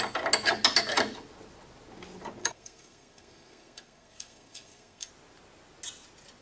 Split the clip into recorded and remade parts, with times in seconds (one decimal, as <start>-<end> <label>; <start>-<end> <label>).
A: 0.0-2.4 recorded; 2.4-5.1 remade; 5.1-6.4 recorded